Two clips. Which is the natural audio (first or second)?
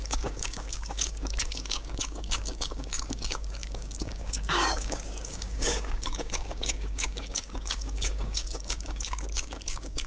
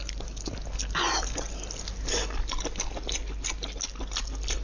second